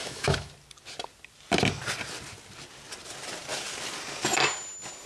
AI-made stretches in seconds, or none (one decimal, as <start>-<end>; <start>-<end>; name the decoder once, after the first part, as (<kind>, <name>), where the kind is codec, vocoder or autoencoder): 0.0-0.5 (autoencoder, DAC-VAE)